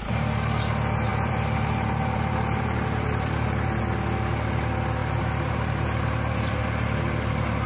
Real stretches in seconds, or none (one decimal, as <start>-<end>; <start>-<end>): 0.0-1.1; 3.8-5.0; 6.6-7.7